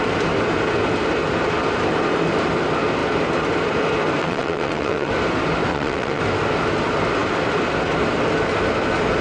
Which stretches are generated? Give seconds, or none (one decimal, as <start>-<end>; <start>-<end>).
4.2-5.1; 5.7-6.2